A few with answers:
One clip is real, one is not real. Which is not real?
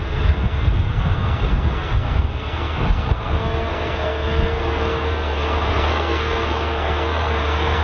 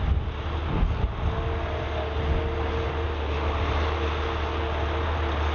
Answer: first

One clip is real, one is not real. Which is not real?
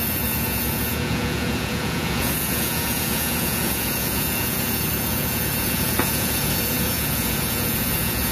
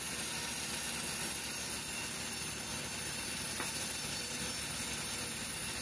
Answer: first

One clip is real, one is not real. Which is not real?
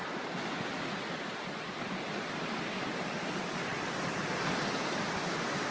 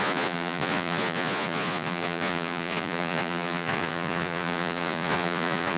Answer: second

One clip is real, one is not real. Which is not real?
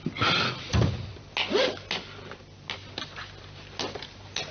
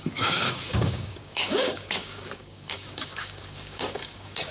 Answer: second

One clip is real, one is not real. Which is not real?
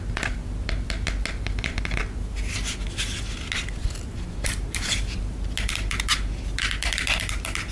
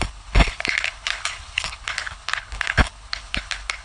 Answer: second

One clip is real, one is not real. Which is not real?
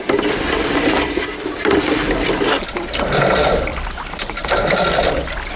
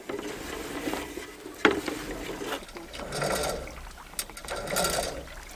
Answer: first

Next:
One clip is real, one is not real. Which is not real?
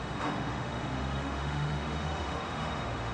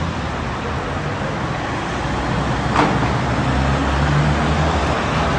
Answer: first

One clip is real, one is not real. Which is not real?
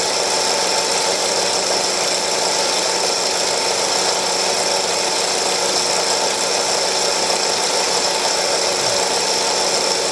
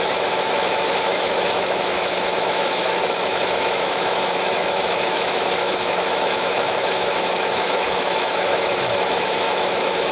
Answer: second